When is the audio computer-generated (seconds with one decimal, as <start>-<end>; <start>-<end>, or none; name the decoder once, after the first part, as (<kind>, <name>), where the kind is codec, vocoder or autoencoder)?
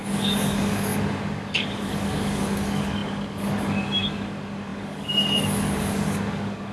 0.0-6.7 (codec, DAC)